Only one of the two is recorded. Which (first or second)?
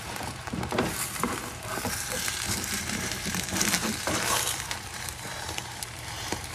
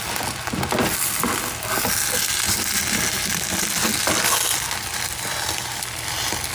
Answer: second